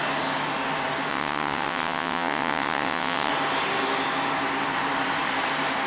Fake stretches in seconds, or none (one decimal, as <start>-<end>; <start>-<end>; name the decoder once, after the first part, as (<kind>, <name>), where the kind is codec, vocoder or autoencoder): 1.1-3.3 (vocoder, WaveNeXt)